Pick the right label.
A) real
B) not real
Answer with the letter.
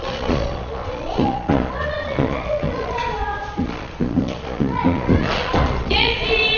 B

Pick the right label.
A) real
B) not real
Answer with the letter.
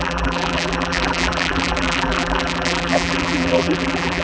B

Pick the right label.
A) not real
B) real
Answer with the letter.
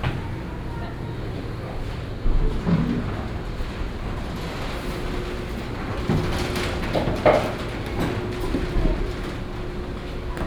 B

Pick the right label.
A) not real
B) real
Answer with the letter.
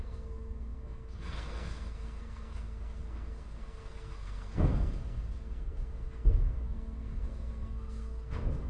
A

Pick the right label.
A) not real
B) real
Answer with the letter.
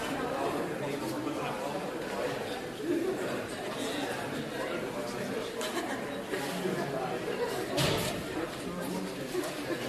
B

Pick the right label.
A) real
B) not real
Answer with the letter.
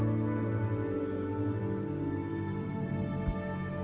A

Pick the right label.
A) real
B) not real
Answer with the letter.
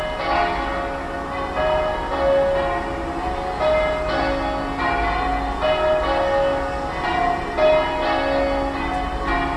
A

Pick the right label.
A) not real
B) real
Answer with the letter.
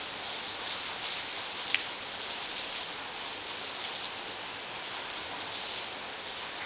B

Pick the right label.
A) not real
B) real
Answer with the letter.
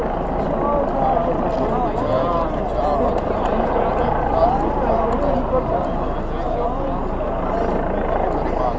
B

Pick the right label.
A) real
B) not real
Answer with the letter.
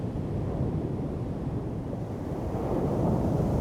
A